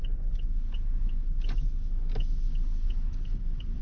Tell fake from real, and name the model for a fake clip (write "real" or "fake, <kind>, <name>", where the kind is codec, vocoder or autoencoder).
real